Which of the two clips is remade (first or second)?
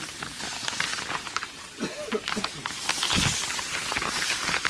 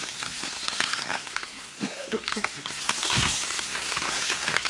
second